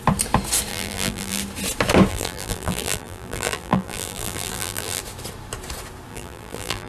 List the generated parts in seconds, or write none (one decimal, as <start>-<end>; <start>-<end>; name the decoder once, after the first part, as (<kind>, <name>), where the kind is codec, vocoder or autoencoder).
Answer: 0.7-1.4 (vocoder, BigVGAN v2); 2.1-5.0; 6.1-6.9